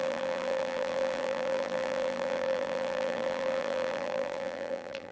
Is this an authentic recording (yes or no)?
no